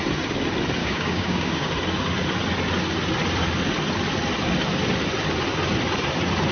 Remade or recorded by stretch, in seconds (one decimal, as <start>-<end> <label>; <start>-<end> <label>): 0.0-0.8 recorded; 0.8-1.7 remade; 1.7-6.5 recorded